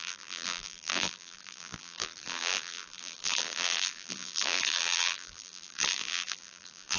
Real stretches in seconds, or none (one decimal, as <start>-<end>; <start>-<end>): none